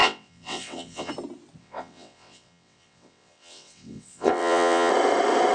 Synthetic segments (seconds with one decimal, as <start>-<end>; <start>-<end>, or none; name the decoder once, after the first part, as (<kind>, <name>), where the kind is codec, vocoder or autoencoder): 0.0-1.1 (vocoder, WaveNeXt); 1.6-4.9